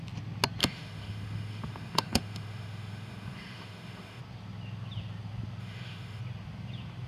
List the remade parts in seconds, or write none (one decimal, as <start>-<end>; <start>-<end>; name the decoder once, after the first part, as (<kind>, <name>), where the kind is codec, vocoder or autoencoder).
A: 0.6-4.2 (autoencoder, DAC-VAE); 5.6-6.2